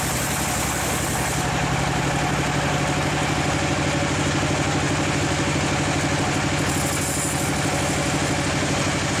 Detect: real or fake real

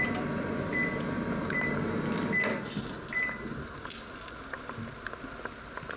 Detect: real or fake real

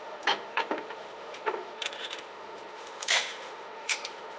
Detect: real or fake fake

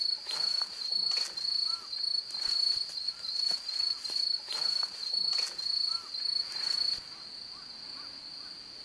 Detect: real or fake real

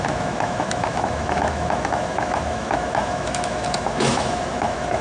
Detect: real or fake fake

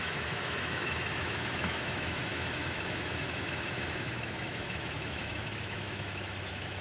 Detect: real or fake fake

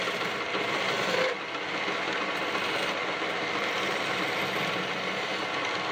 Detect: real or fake real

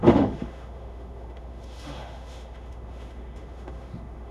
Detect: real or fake fake